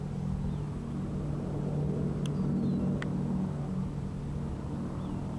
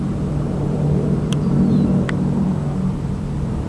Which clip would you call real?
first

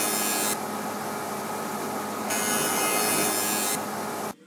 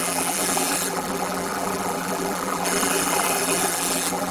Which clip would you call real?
first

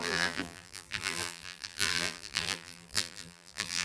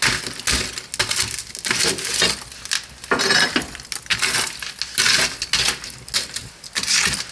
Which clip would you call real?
second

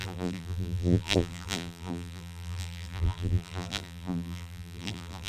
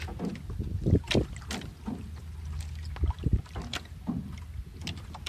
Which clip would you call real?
second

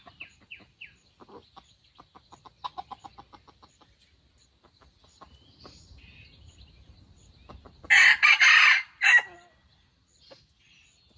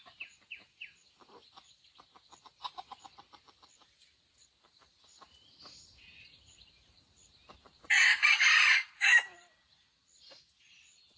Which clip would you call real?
first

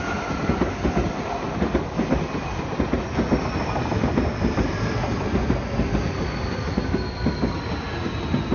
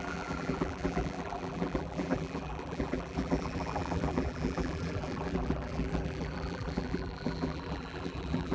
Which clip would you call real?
first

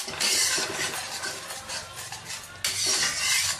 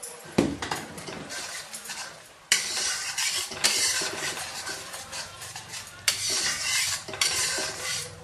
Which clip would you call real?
first